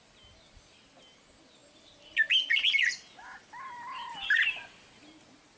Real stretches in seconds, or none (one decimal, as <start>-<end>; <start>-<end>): 0.0-5.6